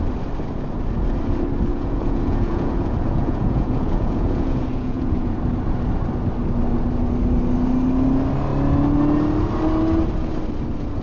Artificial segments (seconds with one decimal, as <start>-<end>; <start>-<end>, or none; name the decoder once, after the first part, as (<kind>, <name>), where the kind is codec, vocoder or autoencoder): 1.7-5.4 (vocoder, Vocos)